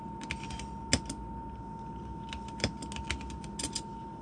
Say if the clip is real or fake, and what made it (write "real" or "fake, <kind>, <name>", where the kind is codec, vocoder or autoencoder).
real